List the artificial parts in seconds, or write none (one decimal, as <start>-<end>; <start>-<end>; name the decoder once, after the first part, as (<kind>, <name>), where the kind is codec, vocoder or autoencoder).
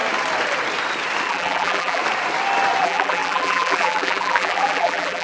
1.3-2.0 (vocoder, BigVGAN v2); 2.8-5.2